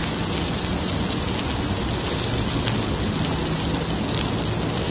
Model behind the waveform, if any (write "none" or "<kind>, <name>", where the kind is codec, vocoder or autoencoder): none